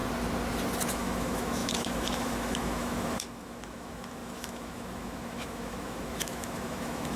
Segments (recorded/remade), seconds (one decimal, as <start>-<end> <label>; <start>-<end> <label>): 0.0-0.9 recorded; 0.9-7.2 remade